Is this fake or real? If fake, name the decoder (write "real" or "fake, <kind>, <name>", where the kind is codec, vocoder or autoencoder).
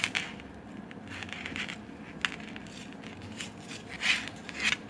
real